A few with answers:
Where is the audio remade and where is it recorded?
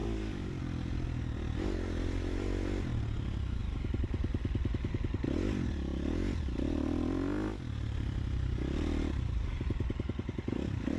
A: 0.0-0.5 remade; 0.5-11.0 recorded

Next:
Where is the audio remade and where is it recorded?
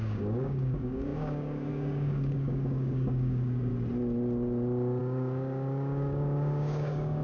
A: 0.0-3.7 remade; 3.7-5.0 recorded; 5.0-7.2 remade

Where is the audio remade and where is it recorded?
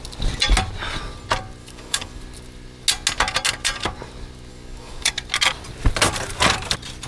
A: 0.0-1.6 recorded; 1.6-2.2 remade; 2.2-4.5 recorded; 4.5-5.1 remade; 5.1-7.1 recorded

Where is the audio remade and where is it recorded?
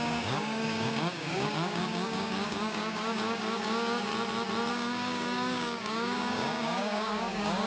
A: 0.0-4.1 remade; 4.1-4.7 recorded; 4.7-7.7 remade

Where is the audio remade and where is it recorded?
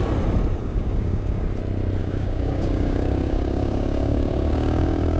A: 0.0-0.6 recorded; 0.6-1.5 remade; 1.5-2.0 recorded; 2.0-5.2 remade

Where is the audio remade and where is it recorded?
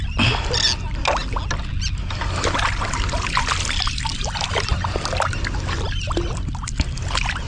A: 0.0-7.5 recorded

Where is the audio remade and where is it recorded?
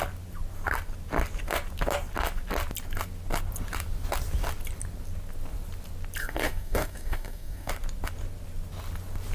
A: 0.0-6.2 recorded; 6.2-7.7 remade; 7.7-9.3 recorded